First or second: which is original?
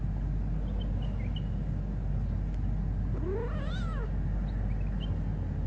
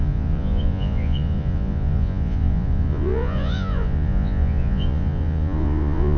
first